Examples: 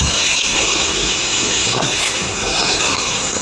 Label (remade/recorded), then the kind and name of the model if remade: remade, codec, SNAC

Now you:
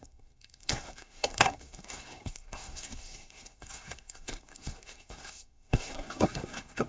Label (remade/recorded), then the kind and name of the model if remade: remade, codec, SNAC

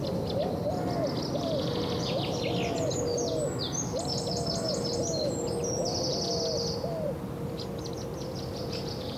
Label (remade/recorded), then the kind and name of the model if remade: recorded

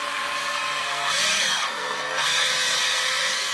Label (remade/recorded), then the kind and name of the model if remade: remade, codec, SNAC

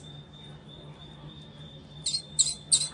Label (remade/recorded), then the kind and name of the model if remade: recorded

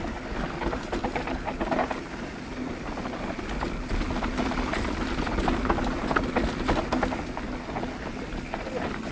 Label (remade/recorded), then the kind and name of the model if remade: recorded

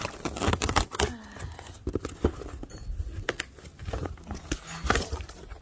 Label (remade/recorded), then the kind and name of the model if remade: recorded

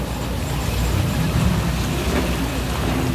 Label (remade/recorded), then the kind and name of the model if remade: recorded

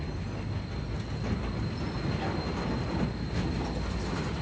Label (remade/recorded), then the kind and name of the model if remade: recorded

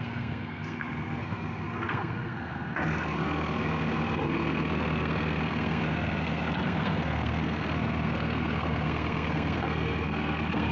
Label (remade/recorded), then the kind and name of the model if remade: remade, codec, SNAC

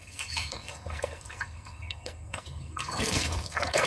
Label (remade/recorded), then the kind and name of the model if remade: remade, codec, SNAC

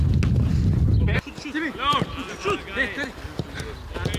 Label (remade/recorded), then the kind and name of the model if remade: recorded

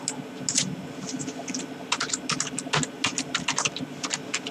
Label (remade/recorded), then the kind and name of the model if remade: recorded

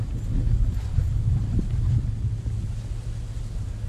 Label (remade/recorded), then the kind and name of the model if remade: recorded